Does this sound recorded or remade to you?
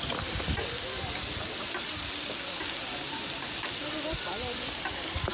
recorded